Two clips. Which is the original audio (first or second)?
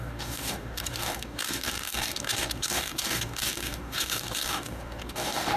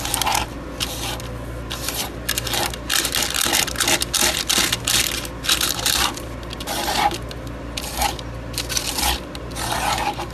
second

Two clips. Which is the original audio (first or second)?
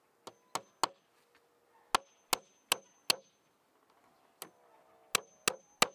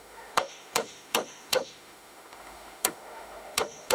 first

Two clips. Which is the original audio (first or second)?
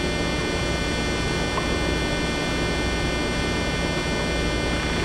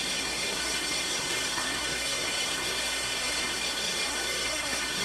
first